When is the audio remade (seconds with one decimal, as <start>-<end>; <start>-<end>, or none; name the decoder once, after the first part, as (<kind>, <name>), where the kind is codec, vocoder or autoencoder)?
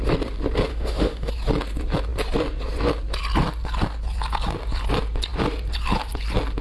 0.7-1.3 (autoencoder, DAC-VAE)